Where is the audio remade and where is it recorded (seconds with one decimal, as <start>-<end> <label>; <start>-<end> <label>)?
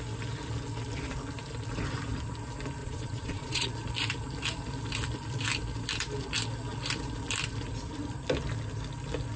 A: 0.0-2.8 recorded; 2.8-3.7 remade; 3.7-9.4 recorded